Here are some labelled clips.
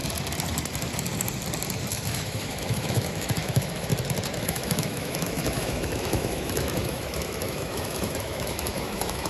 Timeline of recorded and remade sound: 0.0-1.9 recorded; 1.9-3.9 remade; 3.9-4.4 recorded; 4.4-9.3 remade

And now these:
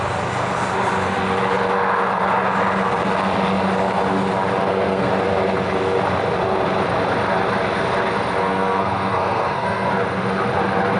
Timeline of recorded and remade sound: 0.0-4.6 recorded; 4.6-5.1 remade; 5.1-8.4 recorded; 8.4-9.9 remade; 9.9-11.0 recorded

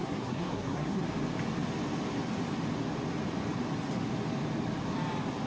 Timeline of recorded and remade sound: 0.0-1.0 remade; 1.0-5.5 recorded

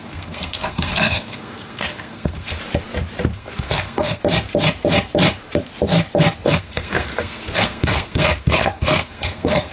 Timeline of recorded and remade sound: 0.0-2.6 remade; 2.6-3.3 recorded; 3.3-4.2 remade; 4.2-6.4 recorded; 6.4-9.7 remade